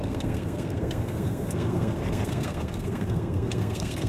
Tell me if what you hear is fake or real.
fake